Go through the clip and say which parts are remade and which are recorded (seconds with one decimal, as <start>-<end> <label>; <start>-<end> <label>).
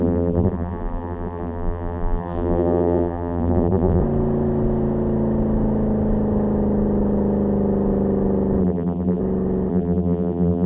0.0-4.0 remade; 4.0-8.6 recorded; 8.6-9.2 remade; 9.2-9.7 recorded; 9.7-10.7 remade